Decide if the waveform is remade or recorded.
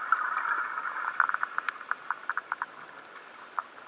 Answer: recorded